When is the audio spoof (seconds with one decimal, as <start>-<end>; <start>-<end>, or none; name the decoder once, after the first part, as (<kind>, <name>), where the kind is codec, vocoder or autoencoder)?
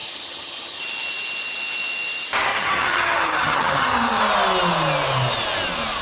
0.0-0.8 (vocoder, HiFi-GAN); 2.5-4.2